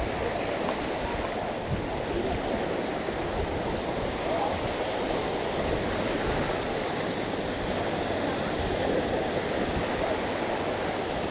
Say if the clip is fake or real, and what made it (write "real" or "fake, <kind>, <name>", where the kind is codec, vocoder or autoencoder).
real